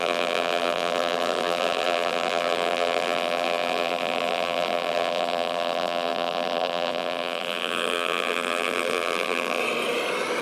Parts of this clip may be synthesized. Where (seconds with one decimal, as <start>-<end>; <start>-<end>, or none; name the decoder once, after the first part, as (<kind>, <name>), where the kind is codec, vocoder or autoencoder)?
0.0-9.6 (vocoder, BigVGAN v2)